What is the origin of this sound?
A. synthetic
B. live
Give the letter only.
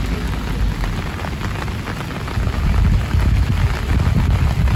B